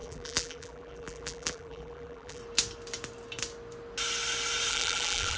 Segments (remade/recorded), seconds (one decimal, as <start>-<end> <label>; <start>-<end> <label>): 0.0-2.4 remade; 2.4-4.7 recorded; 4.7-5.4 remade